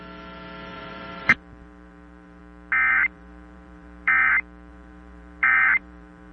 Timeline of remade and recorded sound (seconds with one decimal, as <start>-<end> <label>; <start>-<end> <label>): 0.0-0.7 recorded; 0.7-2.4 remade; 2.4-2.9 recorded; 2.9-4.3 remade; 4.3-4.7 recorded; 4.7-6.3 remade